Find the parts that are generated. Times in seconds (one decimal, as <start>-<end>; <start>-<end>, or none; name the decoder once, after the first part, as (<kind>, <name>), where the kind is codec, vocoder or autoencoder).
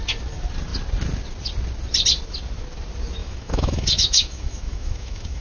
3.2-5.4 (autoencoder, DAC-VAE)